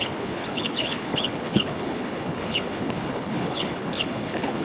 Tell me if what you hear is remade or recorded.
remade